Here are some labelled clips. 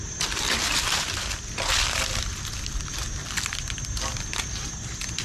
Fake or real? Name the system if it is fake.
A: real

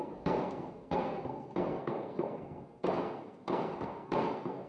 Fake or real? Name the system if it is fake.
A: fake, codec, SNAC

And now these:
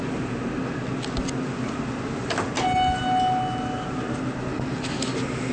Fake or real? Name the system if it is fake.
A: real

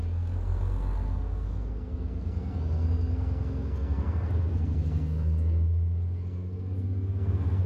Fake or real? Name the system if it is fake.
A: fake, codec, SNAC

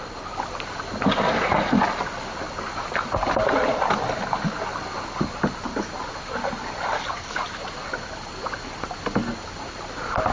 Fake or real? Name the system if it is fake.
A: real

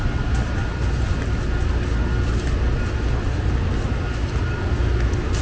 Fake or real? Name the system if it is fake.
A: real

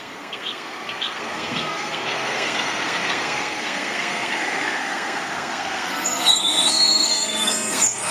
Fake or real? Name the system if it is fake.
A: fake, codec, SNAC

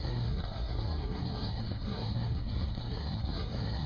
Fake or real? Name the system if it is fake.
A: fake, codec, SNAC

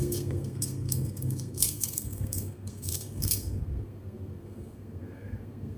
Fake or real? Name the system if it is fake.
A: fake, codec, SNAC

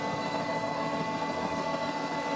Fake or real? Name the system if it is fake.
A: fake, codec, SNAC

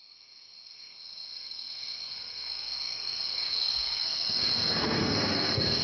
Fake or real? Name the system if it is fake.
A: fake, codec, SNAC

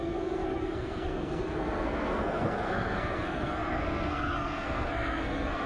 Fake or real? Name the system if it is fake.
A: fake, codec, SNAC